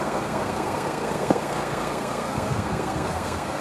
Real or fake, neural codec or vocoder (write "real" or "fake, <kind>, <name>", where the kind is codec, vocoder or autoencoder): fake, codec, SNAC